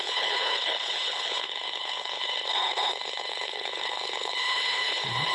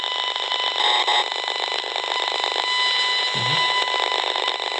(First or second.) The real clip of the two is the second